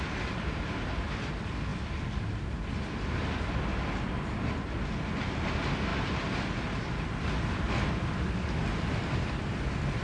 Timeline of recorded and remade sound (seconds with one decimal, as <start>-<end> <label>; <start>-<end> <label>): 0.0-10.0 recorded